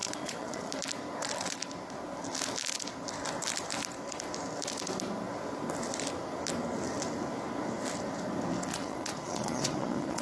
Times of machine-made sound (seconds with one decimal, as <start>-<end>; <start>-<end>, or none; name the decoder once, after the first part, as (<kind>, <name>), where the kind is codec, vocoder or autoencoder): 0.0-0.7 (vocoder, Vocos); 8.7-10.2

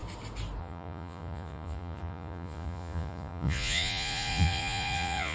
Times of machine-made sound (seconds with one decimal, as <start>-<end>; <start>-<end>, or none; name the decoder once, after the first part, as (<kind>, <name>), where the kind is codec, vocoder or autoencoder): 0.6-5.3 (vocoder, Vocos)

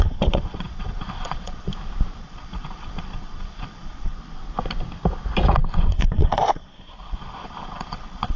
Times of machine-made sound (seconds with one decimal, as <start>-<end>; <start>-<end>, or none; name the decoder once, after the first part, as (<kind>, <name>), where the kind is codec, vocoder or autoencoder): 0.0-1.7 (vocoder, Vocos); 2.2-4.1; 5.7-8.4

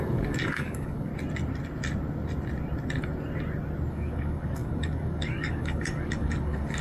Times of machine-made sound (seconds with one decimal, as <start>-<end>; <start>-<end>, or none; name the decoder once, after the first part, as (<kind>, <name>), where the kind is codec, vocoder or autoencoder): 0.0-1.1 (codec, DAC); 3.9-6.8

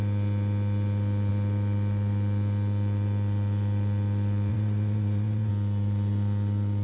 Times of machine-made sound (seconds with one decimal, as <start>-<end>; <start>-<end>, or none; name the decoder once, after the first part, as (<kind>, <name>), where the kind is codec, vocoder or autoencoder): 4.5-5.5 (vocoder, Vocos)

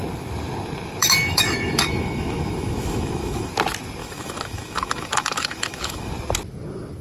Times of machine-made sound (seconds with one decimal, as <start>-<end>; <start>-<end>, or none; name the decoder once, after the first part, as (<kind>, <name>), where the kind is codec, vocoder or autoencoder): 1.0-3.5 (autoencoder, DAC-VAE); 4.0-6.1

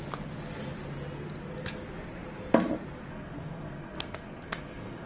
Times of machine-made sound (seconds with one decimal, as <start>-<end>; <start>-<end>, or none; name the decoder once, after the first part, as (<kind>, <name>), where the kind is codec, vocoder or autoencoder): 3.1-5.1 (codec, SNAC)

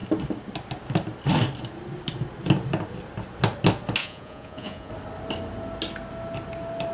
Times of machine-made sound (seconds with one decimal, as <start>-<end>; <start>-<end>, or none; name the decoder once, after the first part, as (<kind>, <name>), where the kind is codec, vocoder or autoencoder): 4.0-4.9 (vocoder, Vocos)